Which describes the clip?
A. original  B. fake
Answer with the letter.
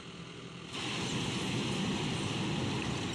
A